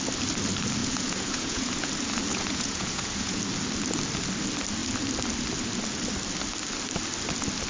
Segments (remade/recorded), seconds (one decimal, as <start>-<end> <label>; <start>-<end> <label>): 0.0-0.8 recorded; 0.8-1.9 remade; 1.9-2.3 recorded; 2.3-3.4 remade; 3.4-7.7 recorded

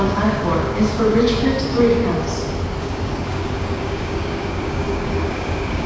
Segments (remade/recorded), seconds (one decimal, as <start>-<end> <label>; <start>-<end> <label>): 0.0-2.0 remade; 2.0-2.8 recorded; 2.8-5.9 remade

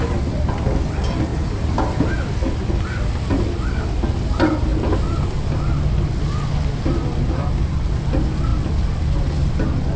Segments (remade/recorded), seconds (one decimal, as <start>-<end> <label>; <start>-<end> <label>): 0.0-1.3 recorded; 1.3-2.3 remade; 2.3-10.0 recorded

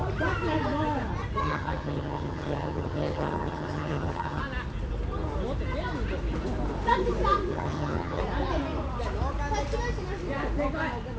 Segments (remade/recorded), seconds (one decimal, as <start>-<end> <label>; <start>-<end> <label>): 0.0-1.4 recorded; 1.4-4.4 remade; 4.4-7.5 recorded; 7.5-8.2 remade; 8.2-11.2 recorded